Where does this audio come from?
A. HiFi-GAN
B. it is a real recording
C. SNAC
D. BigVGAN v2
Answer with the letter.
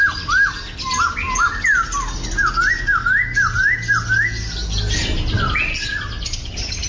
B